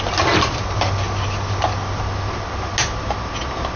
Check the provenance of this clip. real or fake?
real